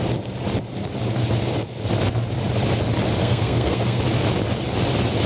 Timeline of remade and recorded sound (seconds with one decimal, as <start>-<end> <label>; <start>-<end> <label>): 0.0-3.2 recorded; 3.2-4.0 remade; 4.0-5.3 recorded